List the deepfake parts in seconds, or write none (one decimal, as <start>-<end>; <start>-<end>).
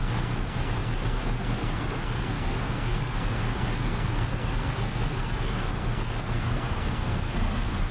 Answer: 0.0-7.9